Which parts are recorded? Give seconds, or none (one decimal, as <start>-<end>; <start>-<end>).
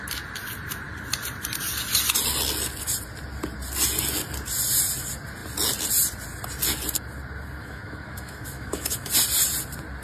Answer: 0.0-7.6; 9.1-10.0